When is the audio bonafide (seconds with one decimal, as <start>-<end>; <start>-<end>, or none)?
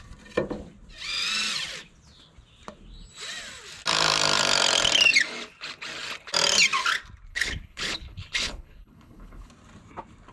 0.0-7.3; 9.5-10.3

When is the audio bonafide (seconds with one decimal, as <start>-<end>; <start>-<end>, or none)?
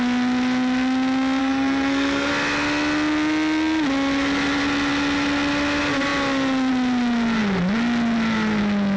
0.0-1.4; 2.3-9.0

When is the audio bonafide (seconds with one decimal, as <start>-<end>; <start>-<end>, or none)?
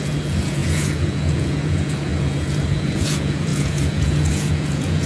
none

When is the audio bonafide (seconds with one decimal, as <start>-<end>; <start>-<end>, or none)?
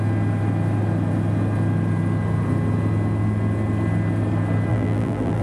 0.0-4.7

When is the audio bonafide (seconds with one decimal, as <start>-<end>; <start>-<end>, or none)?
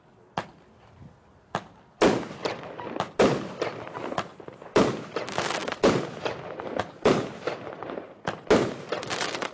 0.0-9.5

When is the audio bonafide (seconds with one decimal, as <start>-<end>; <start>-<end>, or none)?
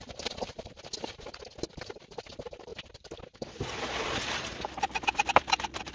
0.0-2.7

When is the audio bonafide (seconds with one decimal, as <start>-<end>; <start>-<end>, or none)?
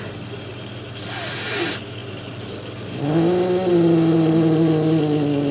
0.0-5.5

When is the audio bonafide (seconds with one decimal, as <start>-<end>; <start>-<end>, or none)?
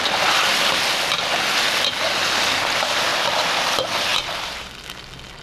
0.0-3.1; 3.6-5.4